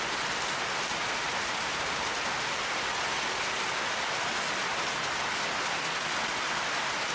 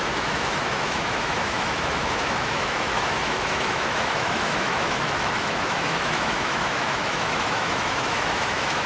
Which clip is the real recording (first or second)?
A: first